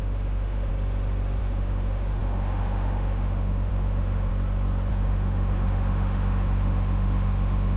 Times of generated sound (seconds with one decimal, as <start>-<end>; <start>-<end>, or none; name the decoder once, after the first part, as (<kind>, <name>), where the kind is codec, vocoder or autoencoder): 0.0-0.7 (autoencoder, DAC-VAE); 1.4-4.3; 4.9-7.8